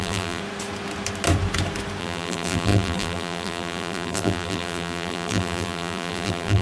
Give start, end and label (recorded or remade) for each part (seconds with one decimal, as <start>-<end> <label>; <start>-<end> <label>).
0.0-0.4 remade; 0.4-2.0 recorded; 2.0-6.6 remade